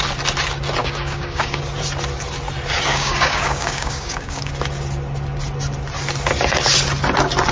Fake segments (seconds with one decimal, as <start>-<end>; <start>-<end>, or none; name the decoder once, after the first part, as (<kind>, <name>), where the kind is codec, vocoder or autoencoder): 0.8-1.6 (codec, DAC); 2.9-4.5